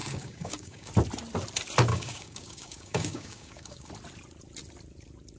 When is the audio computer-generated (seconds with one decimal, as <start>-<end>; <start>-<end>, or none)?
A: 0.0-0.9; 1.9-3.9